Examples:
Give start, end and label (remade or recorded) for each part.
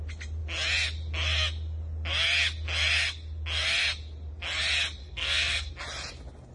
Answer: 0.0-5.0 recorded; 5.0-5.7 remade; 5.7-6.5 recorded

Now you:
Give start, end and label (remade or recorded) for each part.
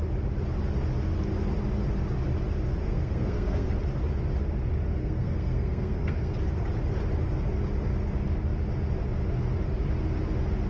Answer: 0.0-2.8 recorded; 2.8-3.7 remade; 3.7-5.0 recorded; 5.0-6.3 remade; 6.3-10.7 recorded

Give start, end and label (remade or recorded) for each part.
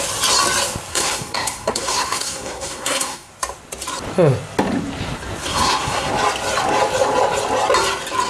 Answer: 0.0-0.9 recorded; 0.9-3.3 remade; 3.3-5.4 recorded; 5.4-6.1 remade; 6.1-8.3 recorded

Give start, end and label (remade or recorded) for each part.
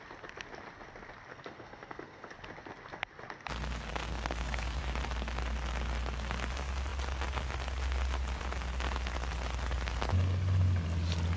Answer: 0.0-1.3 recorded; 1.3-2.3 remade; 2.3-3.9 recorded; 3.9-4.8 remade; 4.8-11.4 recorded